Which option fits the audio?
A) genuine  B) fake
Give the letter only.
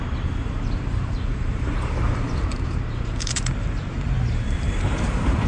B